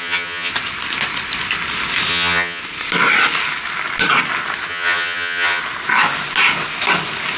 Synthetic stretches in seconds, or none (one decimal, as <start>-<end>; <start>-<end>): 0.0-0.5; 2.1-2.6; 4.7-5.6

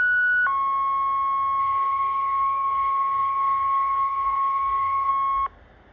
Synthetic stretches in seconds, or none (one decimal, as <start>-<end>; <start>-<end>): 1.6-5.1

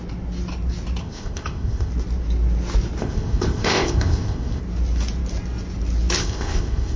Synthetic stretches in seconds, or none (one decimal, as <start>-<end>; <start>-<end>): 1.0-1.9; 3.0-4.6; 6.2-7.0

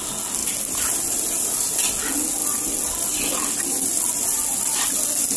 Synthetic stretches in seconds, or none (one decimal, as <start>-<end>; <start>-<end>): 0.4-1.7; 2.4-4.9

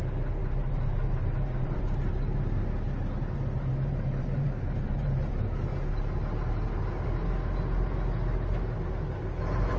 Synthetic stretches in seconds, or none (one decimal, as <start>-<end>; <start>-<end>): 0.4-1.8; 3.7-5.3

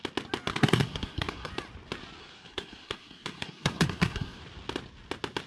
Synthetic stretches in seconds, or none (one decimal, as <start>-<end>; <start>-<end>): 0.5-1.5; 2.2-4.4